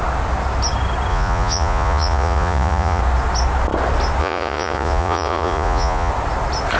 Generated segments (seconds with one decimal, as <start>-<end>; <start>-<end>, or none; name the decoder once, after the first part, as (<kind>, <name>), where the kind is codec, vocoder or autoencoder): 1.1-3.0 (vocoder, Vocos); 4.2-6.1